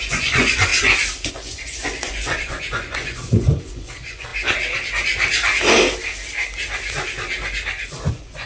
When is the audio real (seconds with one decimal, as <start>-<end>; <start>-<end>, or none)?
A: 0.7-1.3; 4.3-8.1